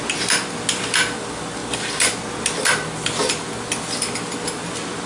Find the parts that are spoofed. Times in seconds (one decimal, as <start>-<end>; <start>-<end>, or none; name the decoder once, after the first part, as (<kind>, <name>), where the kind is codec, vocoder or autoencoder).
none

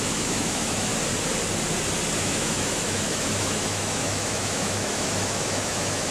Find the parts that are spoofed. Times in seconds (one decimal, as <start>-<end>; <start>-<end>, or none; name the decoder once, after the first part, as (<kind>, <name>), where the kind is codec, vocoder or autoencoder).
0.0-0.9 (autoencoder, DAC-VAE); 2.2-6.1

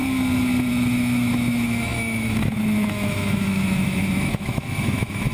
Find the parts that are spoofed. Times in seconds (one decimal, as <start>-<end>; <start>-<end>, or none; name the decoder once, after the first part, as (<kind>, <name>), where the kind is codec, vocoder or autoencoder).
0.7-5.3 (autoencoder, DAC-VAE)

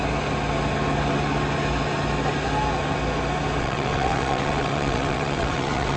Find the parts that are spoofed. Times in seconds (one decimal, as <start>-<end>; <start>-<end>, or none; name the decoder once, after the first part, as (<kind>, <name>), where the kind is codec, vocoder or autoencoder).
3.6-6.0 (vocoder, WaveNeXt)

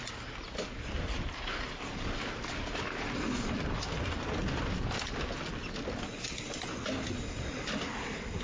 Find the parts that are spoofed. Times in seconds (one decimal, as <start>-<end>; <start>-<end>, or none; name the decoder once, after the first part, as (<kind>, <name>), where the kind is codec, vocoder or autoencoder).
none